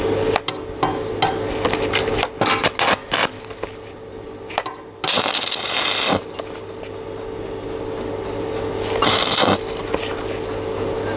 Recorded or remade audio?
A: recorded